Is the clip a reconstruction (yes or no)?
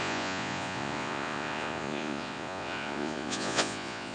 yes